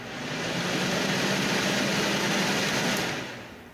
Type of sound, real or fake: real